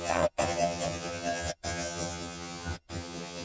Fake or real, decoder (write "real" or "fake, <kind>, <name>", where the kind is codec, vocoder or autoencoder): fake, vocoder, HiFi-GAN